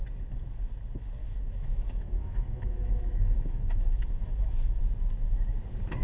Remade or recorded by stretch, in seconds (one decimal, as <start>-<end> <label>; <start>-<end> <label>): 0.0-1.2 recorded; 1.2-4.8 remade; 4.8-6.0 recorded